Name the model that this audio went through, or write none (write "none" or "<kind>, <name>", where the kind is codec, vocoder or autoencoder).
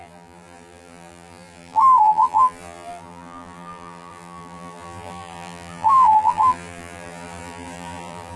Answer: vocoder, BigVGAN v2